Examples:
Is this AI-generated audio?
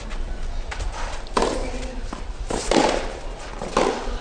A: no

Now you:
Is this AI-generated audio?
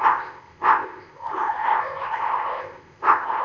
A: yes